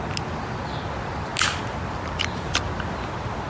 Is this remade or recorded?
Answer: recorded